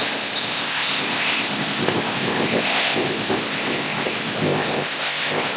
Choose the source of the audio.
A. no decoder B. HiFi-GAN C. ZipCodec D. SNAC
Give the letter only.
C